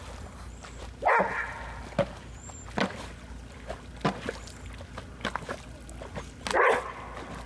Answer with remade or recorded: recorded